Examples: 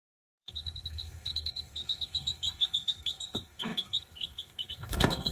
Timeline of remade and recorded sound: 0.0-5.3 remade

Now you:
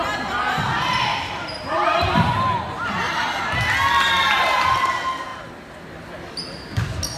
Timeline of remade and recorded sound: 0.0-1.1 recorded; 1.1-2.3 remade; 2.3-7.2 recorded

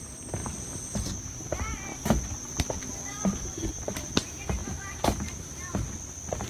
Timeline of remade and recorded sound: 0.0-0.4 recorded; 0.4-1.0 remade; 1.0-4.6 recorded; 4.6-5.7 remade; 5.7-6.5 recorded

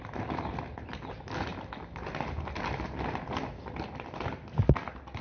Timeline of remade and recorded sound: 0.0-5.2 recorded

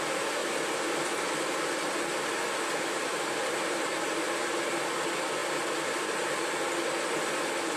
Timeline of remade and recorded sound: 0.0-0.4 recorded; 0.4-1.6 remade; 1.6-2.1 recorded; 2.1-4.1 remade; 4.1-7.8 recorded

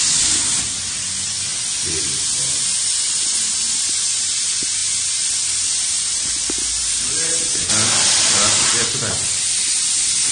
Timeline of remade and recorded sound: 0.0-10.3 recorded

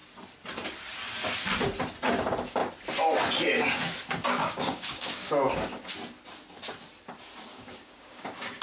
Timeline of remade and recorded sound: 0.0-4.4 recorded; 4.4-5.9 remade; 5.9-7.5 recorded; 7.5-8.6 remade